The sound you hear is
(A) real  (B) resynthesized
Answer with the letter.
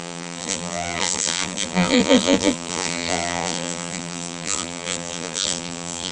B